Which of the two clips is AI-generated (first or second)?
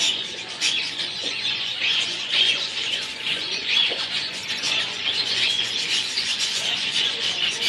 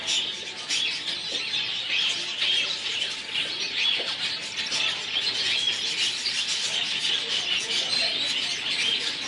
first